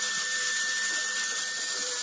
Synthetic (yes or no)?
no